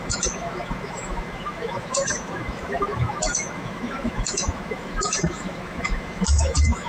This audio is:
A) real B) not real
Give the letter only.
B